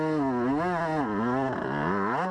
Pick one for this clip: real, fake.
real